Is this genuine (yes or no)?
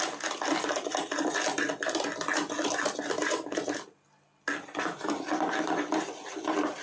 yes